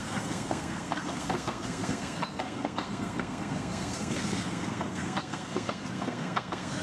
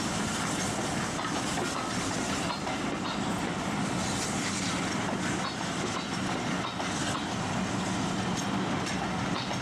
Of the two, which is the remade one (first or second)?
first